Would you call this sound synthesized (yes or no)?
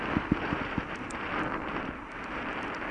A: yes